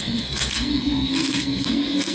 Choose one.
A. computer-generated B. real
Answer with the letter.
A